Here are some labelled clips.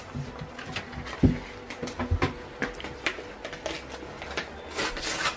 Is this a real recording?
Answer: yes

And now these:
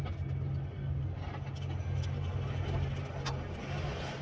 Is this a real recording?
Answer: yes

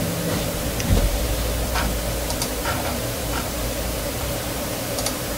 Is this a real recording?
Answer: no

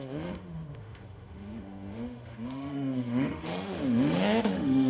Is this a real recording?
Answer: no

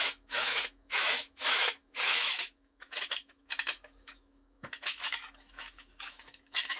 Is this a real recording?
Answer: no